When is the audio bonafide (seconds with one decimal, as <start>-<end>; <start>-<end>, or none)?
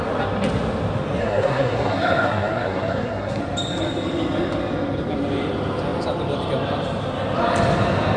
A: 0.0-1.2; 3.4-8.2